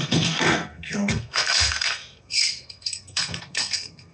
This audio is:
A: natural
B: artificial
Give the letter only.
B